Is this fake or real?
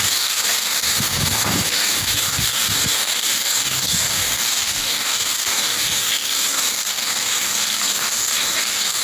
fake